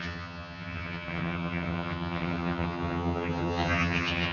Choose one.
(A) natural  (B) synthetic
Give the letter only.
B